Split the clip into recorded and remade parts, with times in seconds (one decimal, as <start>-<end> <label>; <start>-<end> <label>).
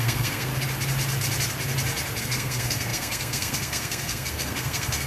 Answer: 0.0-0.5 remade; 0.5-2.2 recorded; 2.2-5.1 remade